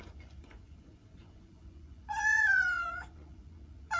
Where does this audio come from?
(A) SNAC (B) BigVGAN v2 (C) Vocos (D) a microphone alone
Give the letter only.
C